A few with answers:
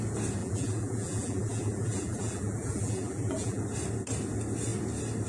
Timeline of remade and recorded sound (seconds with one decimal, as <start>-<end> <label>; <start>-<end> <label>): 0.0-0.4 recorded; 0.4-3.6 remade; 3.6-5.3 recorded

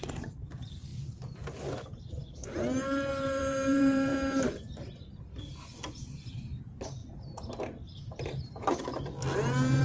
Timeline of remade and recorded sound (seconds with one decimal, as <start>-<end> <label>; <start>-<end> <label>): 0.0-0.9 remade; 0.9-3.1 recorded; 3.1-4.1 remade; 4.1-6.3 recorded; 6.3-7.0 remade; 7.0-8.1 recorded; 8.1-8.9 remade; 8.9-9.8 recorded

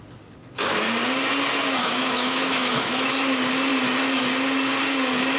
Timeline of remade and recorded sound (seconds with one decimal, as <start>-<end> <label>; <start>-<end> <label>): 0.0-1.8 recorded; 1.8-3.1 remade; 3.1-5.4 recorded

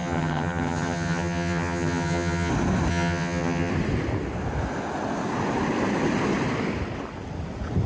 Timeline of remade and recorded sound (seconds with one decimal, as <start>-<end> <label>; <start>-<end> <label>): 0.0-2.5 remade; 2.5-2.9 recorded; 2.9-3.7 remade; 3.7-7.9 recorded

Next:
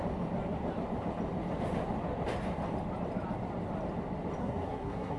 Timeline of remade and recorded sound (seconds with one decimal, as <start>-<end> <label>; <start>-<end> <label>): 0.0-4.4 recorded; 4.4-5.2 remade

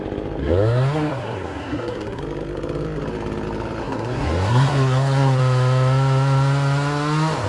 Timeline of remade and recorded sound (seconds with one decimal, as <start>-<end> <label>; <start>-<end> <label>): 0.0-0.4 recorded; 0.4-2.2 remade; 2.2-3.8 recorded; 3.8-5.4 remade; 5.4-7.5 recorded

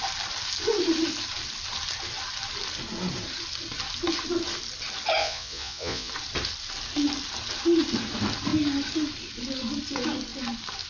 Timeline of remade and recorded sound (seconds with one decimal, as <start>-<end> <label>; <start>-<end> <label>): 0.0-5.2 recorded; 5.2-6.1 remade; 6.1-10.9 recorded